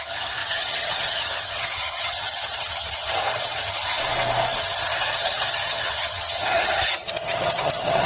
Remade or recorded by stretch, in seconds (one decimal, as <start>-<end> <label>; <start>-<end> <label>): 0.0-4.0 remade; 4.0-4.6 recorded; 4.6-8.1 remade

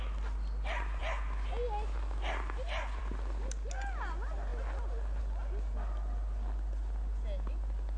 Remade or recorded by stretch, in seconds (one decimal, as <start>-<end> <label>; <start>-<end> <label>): 0.0-8.0 recorded

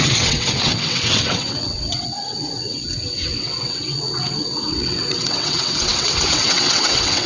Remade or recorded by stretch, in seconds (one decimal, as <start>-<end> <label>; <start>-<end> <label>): 0.0-7.3 remade

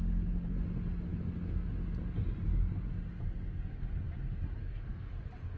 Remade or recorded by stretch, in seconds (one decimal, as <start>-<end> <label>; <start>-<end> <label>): 0.0-4.6 recorded; 4.6-5.1 remade; 5.1-5.6 recorded

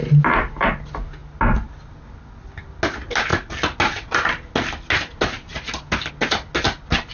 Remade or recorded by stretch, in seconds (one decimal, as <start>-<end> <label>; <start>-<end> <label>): 0.0-7.1 recorded